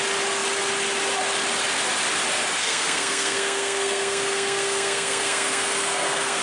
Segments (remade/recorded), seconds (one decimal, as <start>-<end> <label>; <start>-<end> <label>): 0.0-2.6 recorded; 2.6-6.4 remade